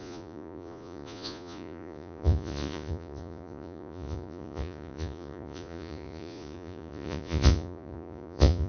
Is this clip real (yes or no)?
no